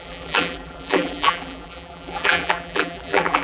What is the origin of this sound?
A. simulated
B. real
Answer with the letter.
A